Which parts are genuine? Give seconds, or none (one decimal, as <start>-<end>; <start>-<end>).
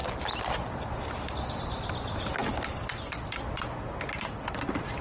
0.0-5.0